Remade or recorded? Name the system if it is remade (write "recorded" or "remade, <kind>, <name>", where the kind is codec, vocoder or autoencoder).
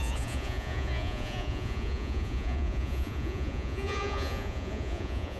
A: remade, vocoder, Vocos